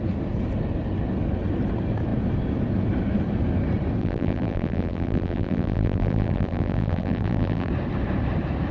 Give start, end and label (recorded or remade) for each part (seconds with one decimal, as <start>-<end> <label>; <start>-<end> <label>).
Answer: 0.0-4.0 recorded; 4.0-7.7 remade; 7.7-8.7 recorded